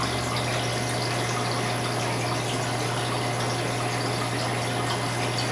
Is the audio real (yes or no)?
yes